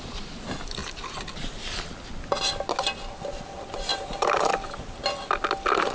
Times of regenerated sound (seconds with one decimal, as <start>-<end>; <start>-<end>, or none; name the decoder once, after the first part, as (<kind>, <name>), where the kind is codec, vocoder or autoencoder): 3.9-4.5 (vocoder, BigVGAN v2)